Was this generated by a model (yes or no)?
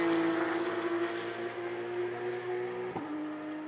no